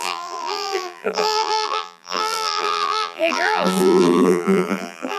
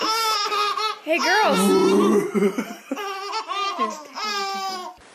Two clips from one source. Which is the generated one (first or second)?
first